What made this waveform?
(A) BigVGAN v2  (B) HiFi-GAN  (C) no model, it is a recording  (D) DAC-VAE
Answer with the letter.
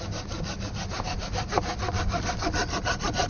C